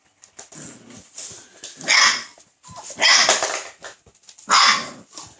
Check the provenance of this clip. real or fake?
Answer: real